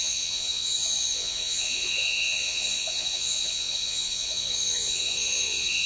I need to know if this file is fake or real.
fake